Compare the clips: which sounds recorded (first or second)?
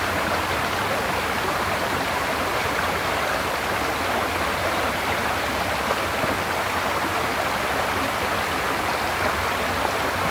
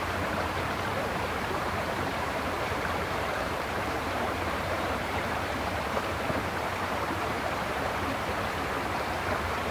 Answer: first